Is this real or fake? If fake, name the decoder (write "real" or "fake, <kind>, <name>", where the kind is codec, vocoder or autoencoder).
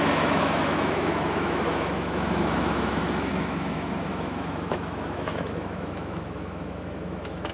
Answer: fake, autoencoder, DAC-VAE